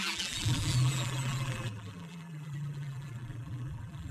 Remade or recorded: remade